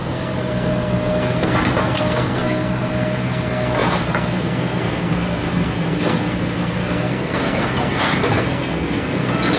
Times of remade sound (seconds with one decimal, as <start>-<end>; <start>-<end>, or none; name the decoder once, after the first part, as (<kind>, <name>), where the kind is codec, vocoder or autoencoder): 0.0-9.6 (codec, SNAC)